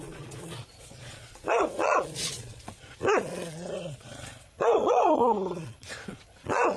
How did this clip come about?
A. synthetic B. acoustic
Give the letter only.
A